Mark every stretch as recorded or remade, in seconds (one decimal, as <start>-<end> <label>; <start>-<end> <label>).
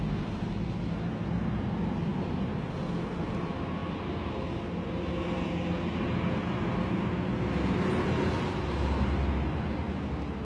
0.0-10.4 recorded